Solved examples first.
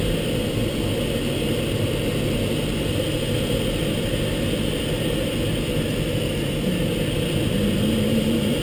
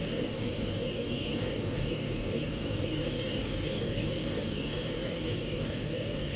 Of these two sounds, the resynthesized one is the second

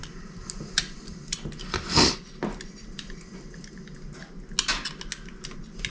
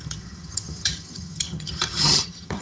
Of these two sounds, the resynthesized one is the second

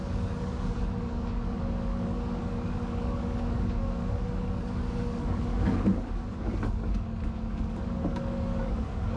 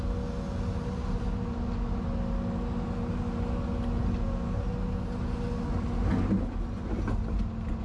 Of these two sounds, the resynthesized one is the first